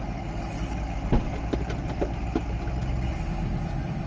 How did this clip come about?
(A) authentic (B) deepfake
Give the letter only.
A